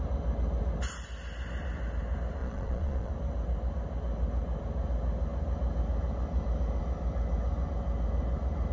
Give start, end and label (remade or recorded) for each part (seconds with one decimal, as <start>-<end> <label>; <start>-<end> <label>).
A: 0.0-2.4 recorded; 2.4-3.1 remade; 3.1-8.7 recorded